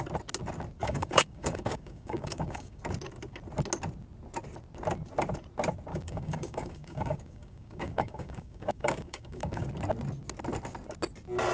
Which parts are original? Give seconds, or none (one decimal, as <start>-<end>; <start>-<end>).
0.0-0.8; 2.8-5.9; 9.7-11.5

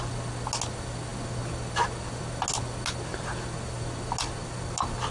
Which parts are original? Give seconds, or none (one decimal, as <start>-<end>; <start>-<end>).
0.0-5.1

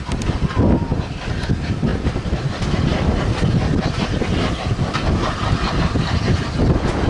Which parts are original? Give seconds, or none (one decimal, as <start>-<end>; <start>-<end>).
0.0-7.1

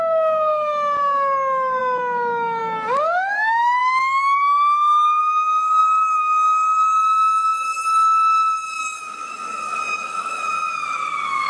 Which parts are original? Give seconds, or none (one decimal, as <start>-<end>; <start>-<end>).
none